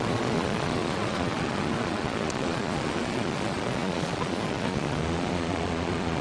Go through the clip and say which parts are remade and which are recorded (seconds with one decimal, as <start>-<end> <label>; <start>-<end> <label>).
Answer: 0.0-6.2 remade